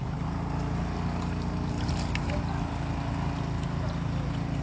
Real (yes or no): yes